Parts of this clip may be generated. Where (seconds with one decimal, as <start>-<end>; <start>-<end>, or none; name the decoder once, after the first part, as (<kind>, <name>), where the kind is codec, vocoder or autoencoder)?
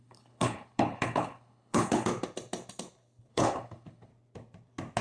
0.0-2.1 (codec, HILCodec); 3.3-4.1